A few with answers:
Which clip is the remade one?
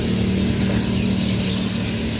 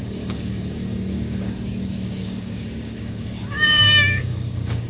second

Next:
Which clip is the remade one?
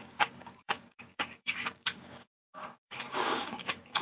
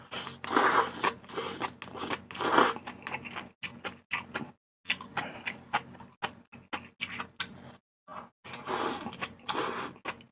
first